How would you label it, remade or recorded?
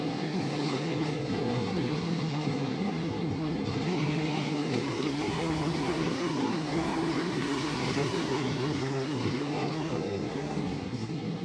remade